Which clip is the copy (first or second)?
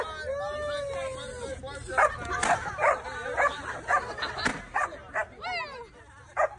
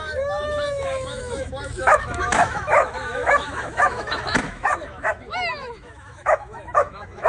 second